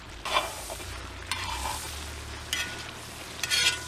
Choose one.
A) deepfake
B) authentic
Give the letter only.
B